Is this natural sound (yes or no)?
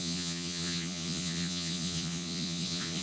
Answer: no